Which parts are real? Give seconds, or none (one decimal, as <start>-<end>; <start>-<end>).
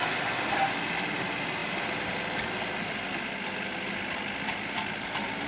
0.0-5.5